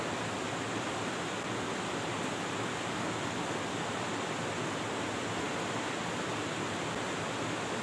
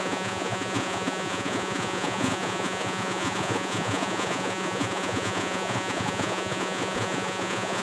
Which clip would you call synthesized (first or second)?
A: second